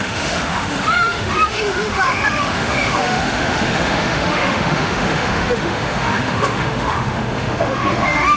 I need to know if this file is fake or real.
fake